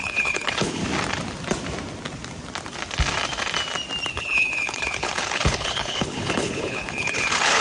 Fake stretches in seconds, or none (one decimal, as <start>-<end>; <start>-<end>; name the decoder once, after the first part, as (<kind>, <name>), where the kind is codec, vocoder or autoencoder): 0.0-0.8 (codec, HILCodec); 4.1-7.6